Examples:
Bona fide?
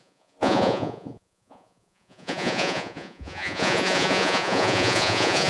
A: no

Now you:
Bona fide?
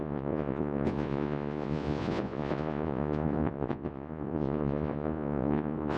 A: no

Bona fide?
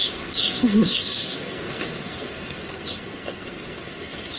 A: no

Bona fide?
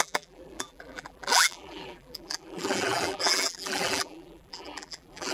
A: no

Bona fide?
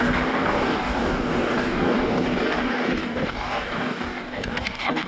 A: no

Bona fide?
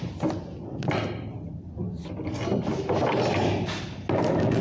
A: yes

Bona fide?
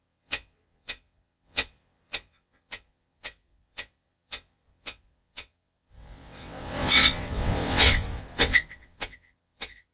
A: no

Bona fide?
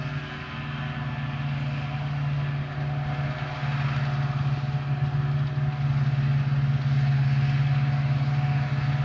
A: yes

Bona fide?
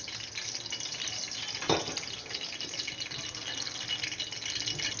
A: yes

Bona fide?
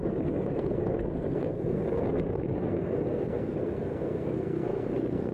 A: no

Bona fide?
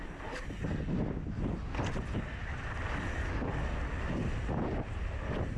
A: yes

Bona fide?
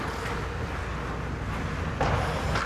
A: yes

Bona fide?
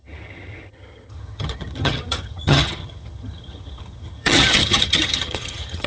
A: no